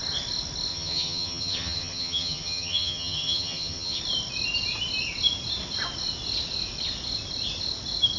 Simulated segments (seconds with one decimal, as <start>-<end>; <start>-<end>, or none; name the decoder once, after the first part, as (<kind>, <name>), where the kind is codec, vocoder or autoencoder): 0.7-4.0 (vocoder, HiFi-GAN)